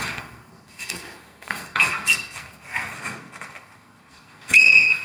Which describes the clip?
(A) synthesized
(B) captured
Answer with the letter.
A